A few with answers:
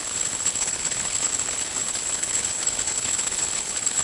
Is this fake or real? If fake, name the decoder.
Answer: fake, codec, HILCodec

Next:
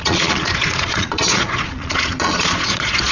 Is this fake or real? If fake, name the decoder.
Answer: fake, vocoder, Vocos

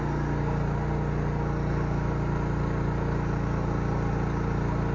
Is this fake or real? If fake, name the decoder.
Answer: real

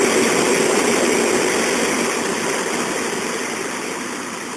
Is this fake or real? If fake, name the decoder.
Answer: real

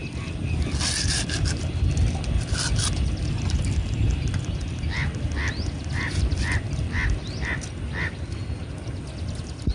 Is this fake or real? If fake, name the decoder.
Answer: real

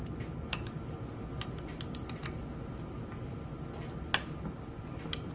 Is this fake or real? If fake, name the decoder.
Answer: real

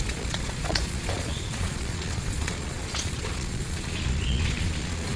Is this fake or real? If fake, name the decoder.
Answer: fake, vocoder, Vocos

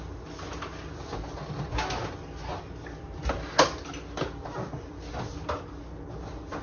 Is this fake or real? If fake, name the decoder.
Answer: real